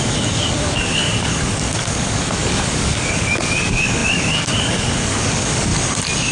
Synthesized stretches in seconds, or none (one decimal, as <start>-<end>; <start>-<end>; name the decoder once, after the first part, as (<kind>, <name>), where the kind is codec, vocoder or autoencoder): 0.0-5.7 (codec, DAC)